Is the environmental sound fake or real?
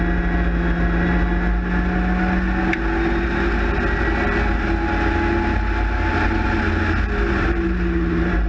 real